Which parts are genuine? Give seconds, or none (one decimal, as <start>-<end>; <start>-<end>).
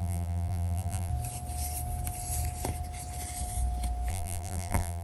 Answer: 1.1-4.1